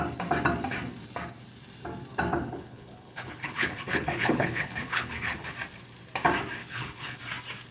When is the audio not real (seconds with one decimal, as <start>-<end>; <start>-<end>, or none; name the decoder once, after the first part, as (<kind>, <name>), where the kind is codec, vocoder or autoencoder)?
2.4-5.4 (codec, HILCodec); 6.6-7.2